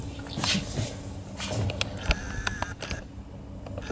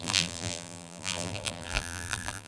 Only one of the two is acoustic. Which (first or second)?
first